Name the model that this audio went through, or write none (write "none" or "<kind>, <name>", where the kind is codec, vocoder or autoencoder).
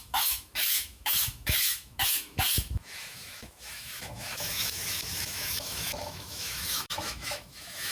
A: autoencoder, DAC-VAE